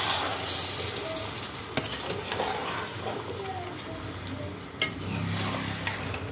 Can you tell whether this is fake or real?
real